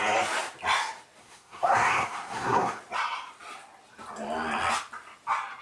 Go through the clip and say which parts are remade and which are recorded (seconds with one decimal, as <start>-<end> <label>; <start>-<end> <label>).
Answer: 0.0-1.2 recorded; 1.2-2.8 remade; 2.8-5.6 recorded

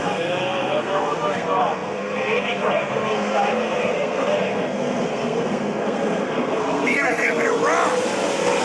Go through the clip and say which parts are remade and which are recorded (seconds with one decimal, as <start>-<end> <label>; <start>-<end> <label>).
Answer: 0.0-7.6 remade; 7.6-8.6 recorded

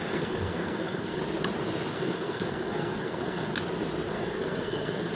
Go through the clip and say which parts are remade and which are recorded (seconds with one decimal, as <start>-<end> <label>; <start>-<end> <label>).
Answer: 0.0-1.2 remade; 1.2-1.9 recorded; 1.9-3.5 remade; 3.5-4.1 recorded; 4.1-5.1 remade

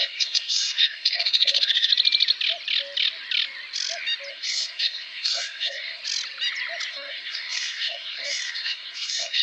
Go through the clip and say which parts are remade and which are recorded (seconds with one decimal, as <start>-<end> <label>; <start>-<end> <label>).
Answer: 0.0-1.9 remade; 1.9-4.3 recorded; 4.3-6.0 remade; 6.0-6.9 recorded; 6.9-9.4 remade

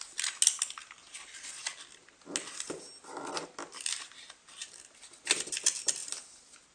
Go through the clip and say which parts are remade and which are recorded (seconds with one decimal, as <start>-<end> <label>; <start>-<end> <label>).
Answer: 0.0-6.7 recorded

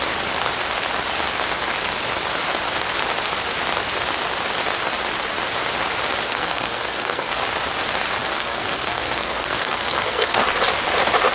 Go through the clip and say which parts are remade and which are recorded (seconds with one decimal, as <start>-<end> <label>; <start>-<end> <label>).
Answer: 0.0-6.2 recorded; 6.2-7.3 remade; 7.3-8.2 recorded; 8.2-10.4 remade; 10.4-11.3 recorded

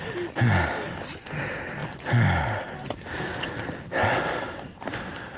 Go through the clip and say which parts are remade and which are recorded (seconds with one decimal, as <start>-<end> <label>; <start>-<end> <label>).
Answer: 0.0-5.4 recorded